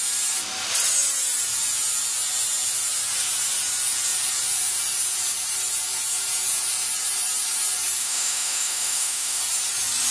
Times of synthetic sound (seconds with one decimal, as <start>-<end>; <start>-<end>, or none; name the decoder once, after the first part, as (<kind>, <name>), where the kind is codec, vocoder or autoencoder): 8.0-9.4 (autoencoder, DAC-VAE)